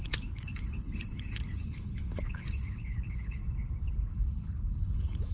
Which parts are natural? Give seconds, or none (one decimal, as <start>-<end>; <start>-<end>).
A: 3.4-4.1